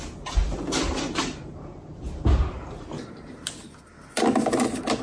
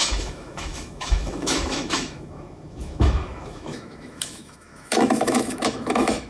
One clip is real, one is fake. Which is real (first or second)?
first